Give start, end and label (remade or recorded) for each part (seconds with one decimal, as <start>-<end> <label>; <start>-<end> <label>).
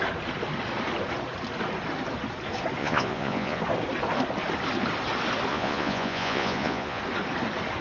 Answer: 0.0-2.8 recorded; 2.8-3.6 remade; 3.6-5.5 recorded; 5.5-7.0 remade; 7.0-7.8 recorded